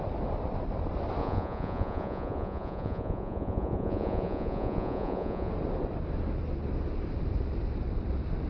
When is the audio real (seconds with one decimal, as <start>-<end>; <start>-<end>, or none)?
0.0-1.2; 5.5-8.5